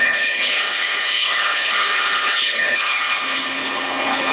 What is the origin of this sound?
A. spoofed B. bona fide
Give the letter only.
A